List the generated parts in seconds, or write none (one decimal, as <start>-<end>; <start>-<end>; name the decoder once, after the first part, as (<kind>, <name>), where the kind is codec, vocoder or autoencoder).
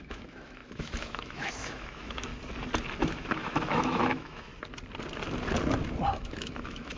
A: 0.0-2.3 (autoencoder, DAC-VAE); 3.0-4.5; 6.1-7.0